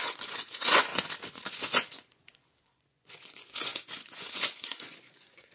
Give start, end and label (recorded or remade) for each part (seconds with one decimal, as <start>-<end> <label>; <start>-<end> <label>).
0.0-5.5 remade